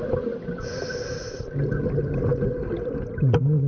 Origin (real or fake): real